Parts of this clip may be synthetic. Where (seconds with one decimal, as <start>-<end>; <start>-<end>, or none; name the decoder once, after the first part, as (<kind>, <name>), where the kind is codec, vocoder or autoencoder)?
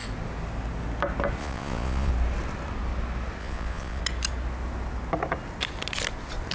1.4-2.1 (vocoder, Vocos); 3.4-4.0